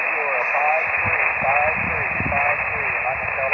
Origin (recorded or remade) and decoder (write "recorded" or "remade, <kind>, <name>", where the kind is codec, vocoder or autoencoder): recorded